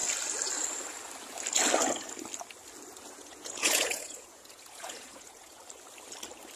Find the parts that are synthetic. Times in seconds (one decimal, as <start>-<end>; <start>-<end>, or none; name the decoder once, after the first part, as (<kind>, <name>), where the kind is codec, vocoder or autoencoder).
3.2-5.6 (vocoder, Vocos)